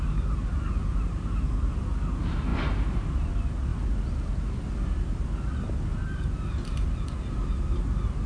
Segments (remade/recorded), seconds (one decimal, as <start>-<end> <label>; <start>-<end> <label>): 0.0-8.3 recorded